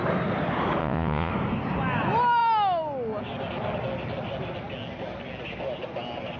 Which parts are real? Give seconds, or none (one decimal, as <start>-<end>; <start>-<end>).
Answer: 0.0-0.8; 1.3-6.4